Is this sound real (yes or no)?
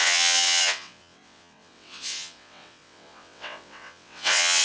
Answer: no